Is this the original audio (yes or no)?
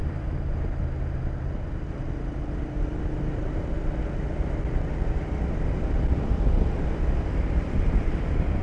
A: yes